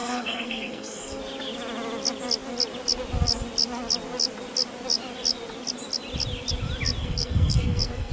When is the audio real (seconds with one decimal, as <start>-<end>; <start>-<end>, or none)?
1.2-7.0